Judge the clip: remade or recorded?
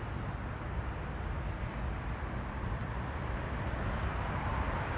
recorded